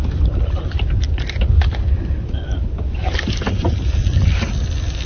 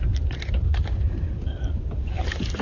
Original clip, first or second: first